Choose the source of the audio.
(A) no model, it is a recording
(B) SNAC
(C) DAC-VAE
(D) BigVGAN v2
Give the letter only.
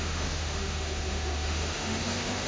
C